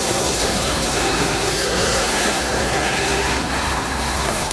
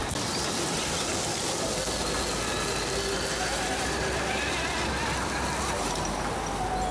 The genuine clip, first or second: second